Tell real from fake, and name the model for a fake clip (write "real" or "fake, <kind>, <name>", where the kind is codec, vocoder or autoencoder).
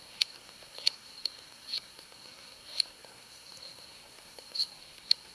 fake, codec, SNAC